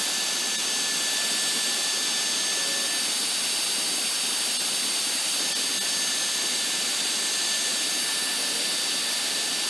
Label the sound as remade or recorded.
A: recorded